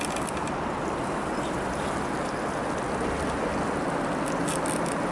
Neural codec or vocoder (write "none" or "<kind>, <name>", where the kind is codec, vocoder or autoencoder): none